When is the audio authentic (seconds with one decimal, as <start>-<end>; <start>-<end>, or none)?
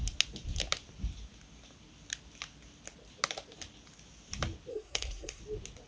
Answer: 0.0-4.7; 5.4-5.9